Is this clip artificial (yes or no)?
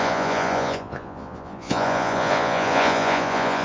yes